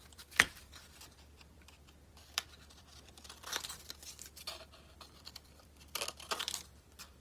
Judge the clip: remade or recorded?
remade